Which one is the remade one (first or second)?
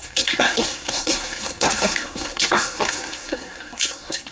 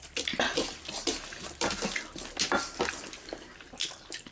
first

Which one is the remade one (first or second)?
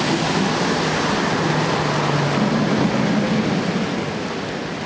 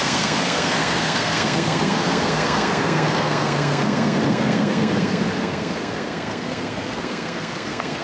second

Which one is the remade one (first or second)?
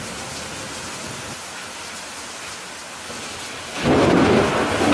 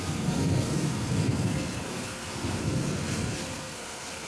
second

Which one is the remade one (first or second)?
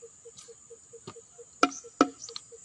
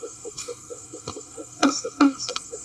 second